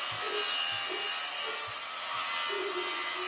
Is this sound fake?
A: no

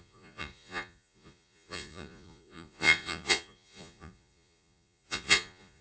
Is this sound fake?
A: yes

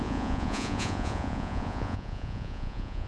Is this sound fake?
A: yes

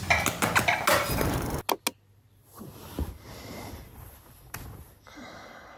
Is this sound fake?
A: no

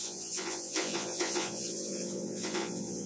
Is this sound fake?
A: yes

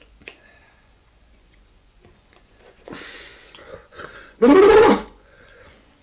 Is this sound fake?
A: yes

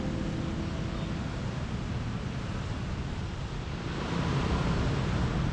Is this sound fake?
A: no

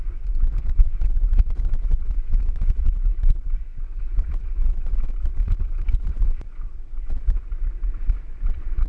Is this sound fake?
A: yes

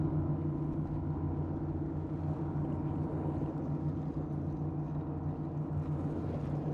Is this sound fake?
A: no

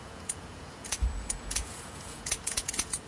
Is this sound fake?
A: yes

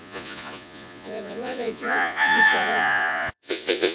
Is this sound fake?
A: yes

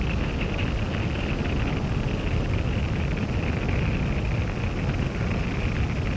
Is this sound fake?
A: no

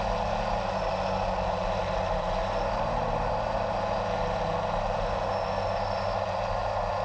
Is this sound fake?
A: no